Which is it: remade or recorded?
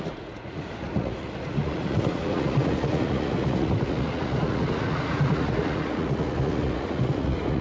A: remade